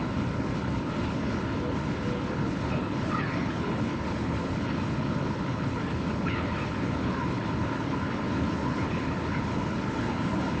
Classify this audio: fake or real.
fake